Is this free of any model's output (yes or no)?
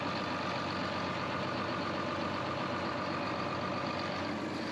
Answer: yes